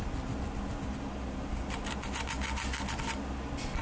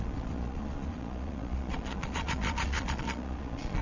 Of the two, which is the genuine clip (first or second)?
first